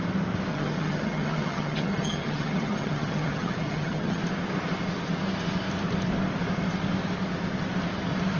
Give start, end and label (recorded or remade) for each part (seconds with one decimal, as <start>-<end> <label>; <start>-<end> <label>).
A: 0.0-0.5 recorded; 0.5-4.2 remade; 4.2-8.4 recorded